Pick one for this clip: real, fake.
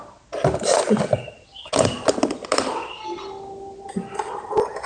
real